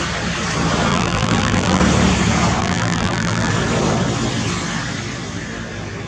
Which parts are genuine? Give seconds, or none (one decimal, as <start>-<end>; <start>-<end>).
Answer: 0.0-0.9; 1.8-2.6; 3.5-6.1